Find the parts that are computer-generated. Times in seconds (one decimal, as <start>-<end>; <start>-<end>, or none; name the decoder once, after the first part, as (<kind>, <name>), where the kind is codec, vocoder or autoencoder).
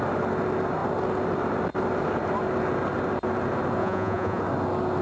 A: 3.8-4.4 (vocoder, Vocos)